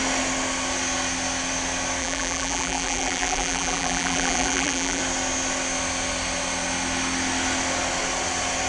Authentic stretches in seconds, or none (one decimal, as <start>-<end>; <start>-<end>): 0.0-2.0; 5.0-8.7